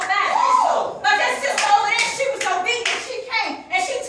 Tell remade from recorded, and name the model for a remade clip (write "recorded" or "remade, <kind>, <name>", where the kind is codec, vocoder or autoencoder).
remade, vocoder, BigVGAN v2